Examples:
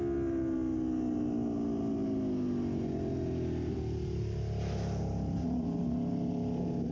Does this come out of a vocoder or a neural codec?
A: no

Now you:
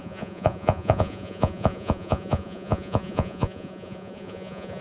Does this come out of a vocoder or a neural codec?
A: yes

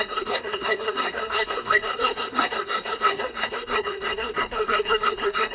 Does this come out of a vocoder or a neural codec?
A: yes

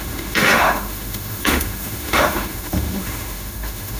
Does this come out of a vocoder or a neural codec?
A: yes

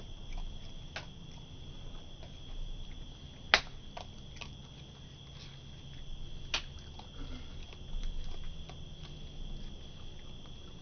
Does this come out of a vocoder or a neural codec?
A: no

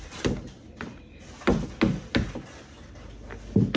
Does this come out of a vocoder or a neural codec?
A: no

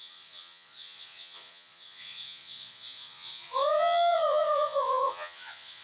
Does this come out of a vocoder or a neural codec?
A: yes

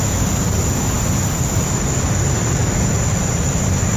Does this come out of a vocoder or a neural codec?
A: no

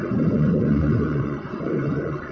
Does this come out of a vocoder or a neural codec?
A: yes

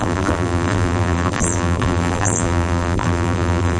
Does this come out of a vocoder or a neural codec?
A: yes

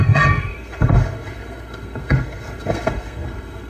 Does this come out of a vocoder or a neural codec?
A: yes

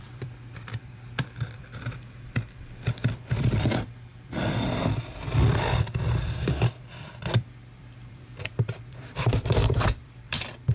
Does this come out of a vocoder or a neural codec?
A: yes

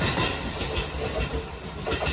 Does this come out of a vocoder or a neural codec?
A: no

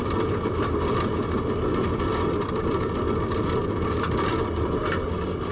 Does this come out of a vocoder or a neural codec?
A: no